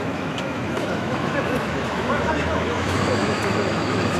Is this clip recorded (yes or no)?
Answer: no